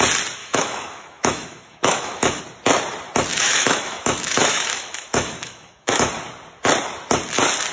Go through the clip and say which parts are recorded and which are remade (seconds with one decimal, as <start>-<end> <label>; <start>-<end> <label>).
0.0-0.4 recorded; 0.4-2.4 remade; 2.4-3.3 recorded; 3.3-6.1 remade; 6.1-7.7 recorded